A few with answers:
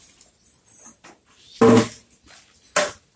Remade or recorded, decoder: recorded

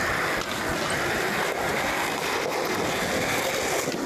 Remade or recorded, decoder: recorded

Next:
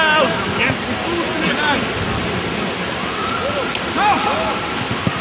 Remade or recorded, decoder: recorded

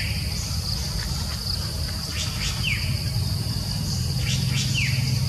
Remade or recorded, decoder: recorded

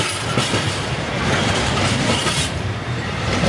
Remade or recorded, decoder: remade, vocoder, BigVGAN v2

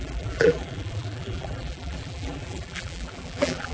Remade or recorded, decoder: remade, vocoder, BigVGAN v2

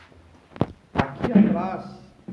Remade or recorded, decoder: recorded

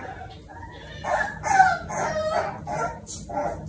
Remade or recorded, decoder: recorded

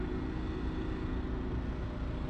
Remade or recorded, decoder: recorded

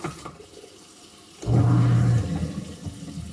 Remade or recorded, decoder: recorded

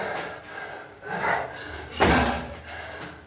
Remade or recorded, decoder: recorded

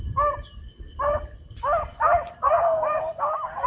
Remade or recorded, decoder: recorded